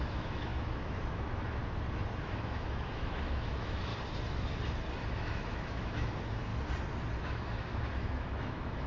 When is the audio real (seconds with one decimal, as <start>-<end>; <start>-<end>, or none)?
1.6-2.2; 3.9-5.1; 6.5-7.2